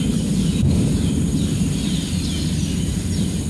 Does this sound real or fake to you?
real